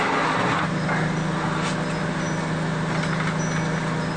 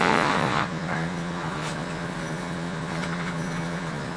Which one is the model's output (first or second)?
second